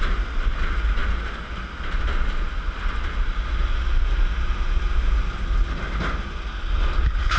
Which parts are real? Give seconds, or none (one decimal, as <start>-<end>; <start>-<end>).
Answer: 0.0-7.4